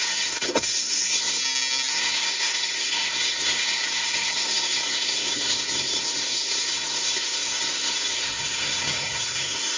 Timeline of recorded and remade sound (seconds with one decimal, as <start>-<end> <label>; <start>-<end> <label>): 0.0-1.4 remade; 1.4-1.9 recorded; 1.9-9.8 remade